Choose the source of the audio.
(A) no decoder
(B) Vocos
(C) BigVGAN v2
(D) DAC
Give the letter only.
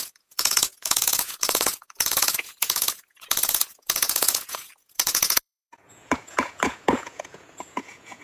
B